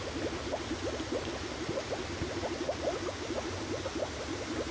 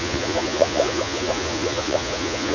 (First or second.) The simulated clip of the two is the second